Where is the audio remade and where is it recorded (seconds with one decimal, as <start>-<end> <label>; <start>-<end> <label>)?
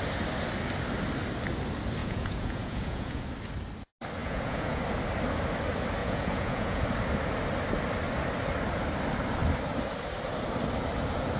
0.0-2.0 recorded; 2.0-3.2 remade; 3.2-4.2 recorded; 4.2-4.8 remade; 4.8-6.0 recorded; 6.0-6.8 remade; 6.8-11.4 recorded